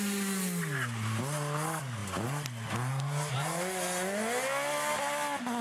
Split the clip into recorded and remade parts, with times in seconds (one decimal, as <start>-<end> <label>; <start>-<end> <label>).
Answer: 0.0-5.6 recorded